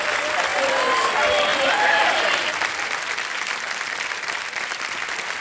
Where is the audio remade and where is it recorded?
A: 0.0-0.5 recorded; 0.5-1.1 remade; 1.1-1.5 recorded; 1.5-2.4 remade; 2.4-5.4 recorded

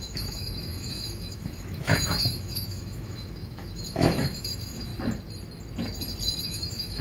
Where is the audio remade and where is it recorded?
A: 0.0-4.9 remade; 4.9-6.4 recorded; 6.4-7.0 remade